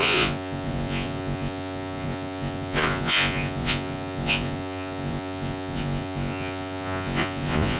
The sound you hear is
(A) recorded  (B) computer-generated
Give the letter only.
B